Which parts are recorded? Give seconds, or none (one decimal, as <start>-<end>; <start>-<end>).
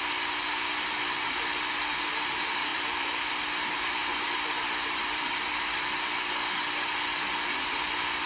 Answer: 0.0-2.7; 3.3-4.0; 5.5-8.3